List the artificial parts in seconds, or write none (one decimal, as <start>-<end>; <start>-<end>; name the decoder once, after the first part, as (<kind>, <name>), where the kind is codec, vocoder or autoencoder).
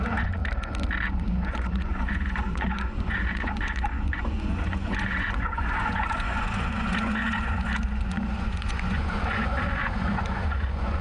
0.0-0.4 (vocoder, Vocos); 1.1-11.0